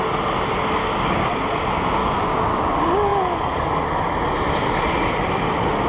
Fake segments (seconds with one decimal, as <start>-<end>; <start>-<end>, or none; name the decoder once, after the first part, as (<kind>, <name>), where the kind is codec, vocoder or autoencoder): 0.8-1.3 (codec, DAC); 2.0-2.6